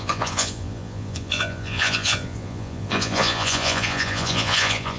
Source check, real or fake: fake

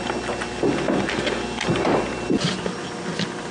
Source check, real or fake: real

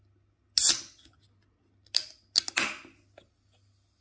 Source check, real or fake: real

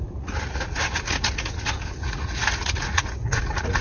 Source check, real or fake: fake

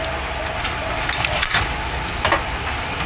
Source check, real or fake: real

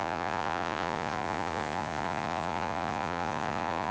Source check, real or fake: fake